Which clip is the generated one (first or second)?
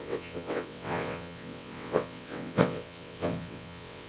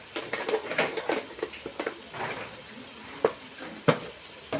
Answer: first